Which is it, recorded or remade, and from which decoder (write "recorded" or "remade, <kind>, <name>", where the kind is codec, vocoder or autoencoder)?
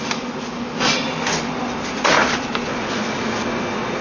recorded